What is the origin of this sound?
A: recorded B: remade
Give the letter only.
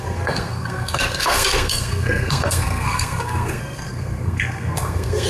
B